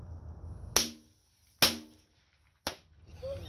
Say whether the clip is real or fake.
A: real